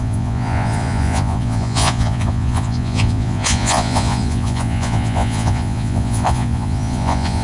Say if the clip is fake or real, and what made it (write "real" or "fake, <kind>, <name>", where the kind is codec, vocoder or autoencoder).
fake, vocoder, Vocos